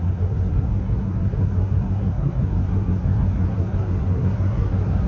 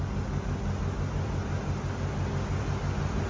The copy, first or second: first